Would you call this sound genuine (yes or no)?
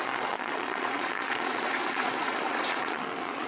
no